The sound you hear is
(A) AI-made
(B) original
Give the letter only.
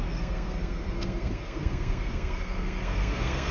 A